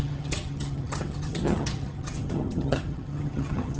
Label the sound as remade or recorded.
remade